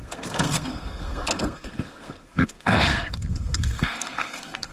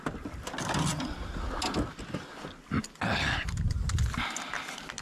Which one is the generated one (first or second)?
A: first